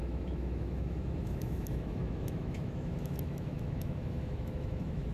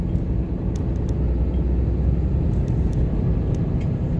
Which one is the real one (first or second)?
second